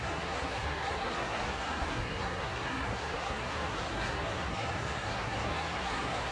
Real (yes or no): no